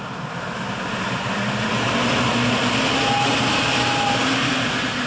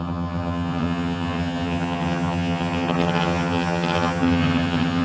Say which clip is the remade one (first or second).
second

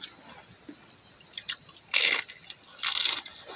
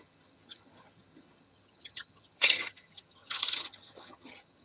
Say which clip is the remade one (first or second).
second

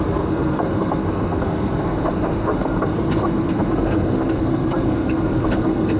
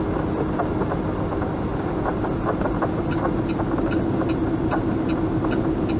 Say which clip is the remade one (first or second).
first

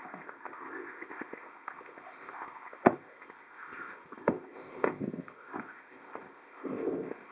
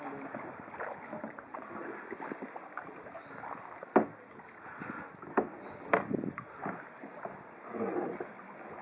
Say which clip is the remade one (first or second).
first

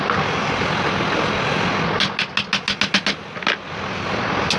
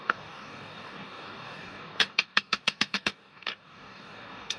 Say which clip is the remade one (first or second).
second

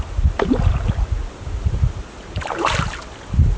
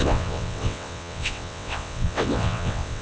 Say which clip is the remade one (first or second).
second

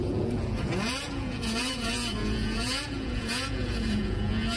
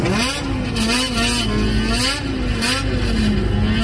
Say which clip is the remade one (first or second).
first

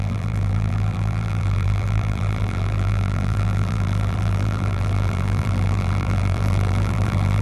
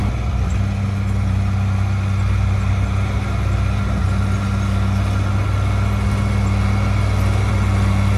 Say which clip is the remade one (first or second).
first